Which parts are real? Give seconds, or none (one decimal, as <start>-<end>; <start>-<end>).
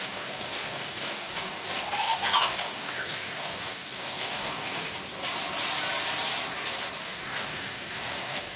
5.0-7.0